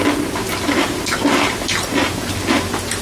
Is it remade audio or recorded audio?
recorded